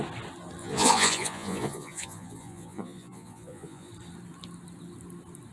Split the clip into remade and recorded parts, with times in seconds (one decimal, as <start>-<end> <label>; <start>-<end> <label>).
0.0-0.6 recorded; 0.6-3.9 remade; 3.9-5.5 recorded